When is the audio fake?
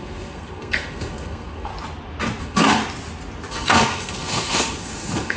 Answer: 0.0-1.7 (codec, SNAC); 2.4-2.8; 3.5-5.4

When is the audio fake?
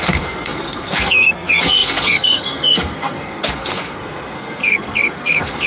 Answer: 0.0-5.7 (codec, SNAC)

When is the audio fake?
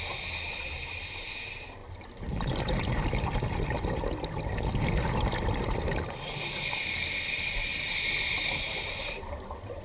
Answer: none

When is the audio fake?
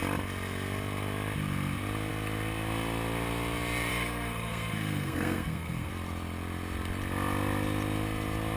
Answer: 3.9-5.9 (codec, SNAC)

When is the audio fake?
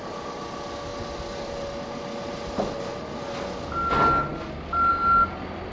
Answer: none